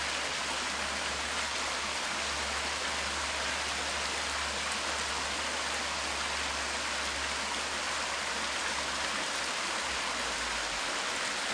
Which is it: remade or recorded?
recorded